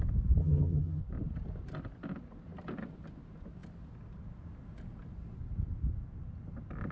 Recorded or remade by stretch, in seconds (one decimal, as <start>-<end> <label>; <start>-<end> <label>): 0.0-0.4 recorded; 0.4-1.0 remade; 1.0-6.9 recorded